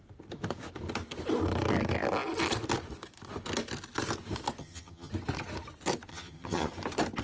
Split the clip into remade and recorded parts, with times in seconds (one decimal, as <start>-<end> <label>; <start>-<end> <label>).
0.0-4.6 recorded; 4.6-5.1 remade; 5.1-6.1 recorded; 6.1-6.7 remade; 6.7-7.2 recorded